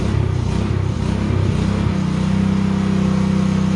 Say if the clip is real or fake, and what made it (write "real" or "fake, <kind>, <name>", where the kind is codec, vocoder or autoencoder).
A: real